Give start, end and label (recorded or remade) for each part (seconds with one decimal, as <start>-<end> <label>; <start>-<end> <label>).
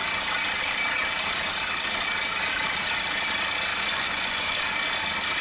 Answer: 0.0-3.7 recorded; 3.7-4.6 remade; 4.6-5.4 recorded